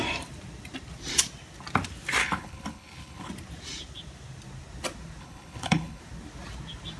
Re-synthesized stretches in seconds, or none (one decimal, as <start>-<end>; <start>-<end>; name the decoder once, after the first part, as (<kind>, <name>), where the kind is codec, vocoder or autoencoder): 2.2-3.3 (codec, HILCodec); 5.2-6.0